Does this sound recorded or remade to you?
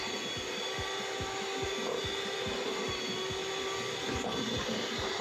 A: recorded